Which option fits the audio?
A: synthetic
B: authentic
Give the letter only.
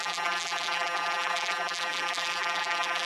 A